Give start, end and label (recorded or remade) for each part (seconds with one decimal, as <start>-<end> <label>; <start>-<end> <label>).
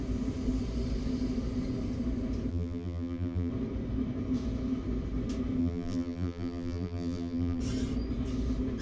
0.0-2.5 recorded; 2.5-3.5 remade; 3.5-5.6 recorded; 5.6-7.6 remade; 7.6-8.8 recorded